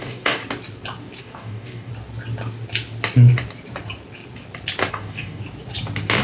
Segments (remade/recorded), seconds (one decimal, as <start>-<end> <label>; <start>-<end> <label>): 0.0-0.4 remade; 0.4-1.2 recorded; 1.2-1.9 remade; 1.9-4.9 recorded; 4.9-5.4 remade; 5.4-6.2 recorded